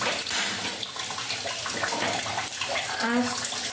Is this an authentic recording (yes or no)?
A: yes